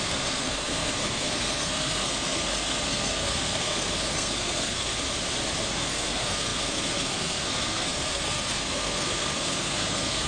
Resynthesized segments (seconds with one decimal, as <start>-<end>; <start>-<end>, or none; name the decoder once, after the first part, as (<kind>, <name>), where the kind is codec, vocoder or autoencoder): 0.0-4.9 (codec, SNAC); 5.7-10.3